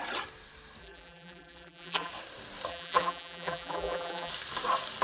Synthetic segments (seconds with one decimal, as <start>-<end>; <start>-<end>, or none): 0.8-2.1; 2.7-4.3